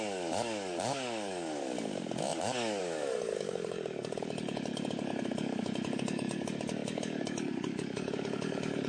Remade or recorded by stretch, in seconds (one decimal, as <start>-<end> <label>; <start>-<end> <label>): 0.0-8.9 remade